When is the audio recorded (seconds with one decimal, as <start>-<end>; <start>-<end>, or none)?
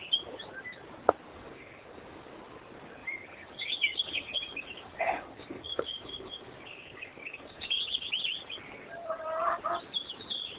0.0-1.3; 2.4-3.0; 8.1-10.6